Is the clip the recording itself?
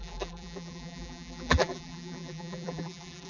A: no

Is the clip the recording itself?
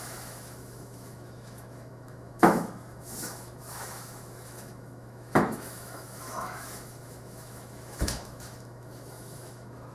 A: no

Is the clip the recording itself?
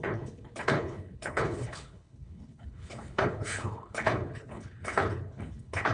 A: no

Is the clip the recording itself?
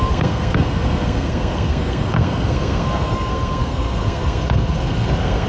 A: no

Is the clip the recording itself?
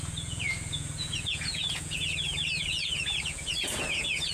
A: no